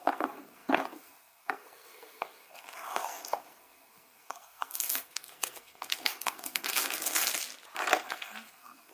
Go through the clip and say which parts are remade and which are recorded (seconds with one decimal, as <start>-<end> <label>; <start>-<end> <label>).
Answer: 0.0-7.3 remade; 7.3-7.9 recorded; 7.9-8.9 remade